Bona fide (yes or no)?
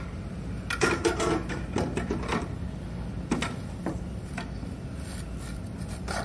yes